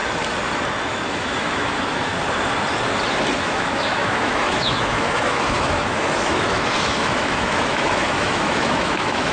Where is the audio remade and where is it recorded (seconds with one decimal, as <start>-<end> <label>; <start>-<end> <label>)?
0.0-0.8 recorded; 0.8-2.1 remade; 2.1-3.4 recorded; 3.4-9.3 remade